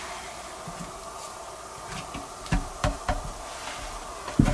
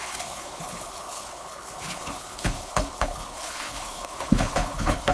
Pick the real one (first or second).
first